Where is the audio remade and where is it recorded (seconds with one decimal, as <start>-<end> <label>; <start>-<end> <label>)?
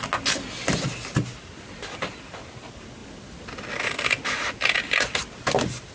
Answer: 0.0-5.9 recorded